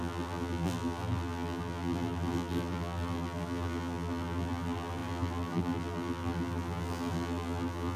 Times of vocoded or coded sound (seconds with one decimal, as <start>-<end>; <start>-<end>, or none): 0.0-8.0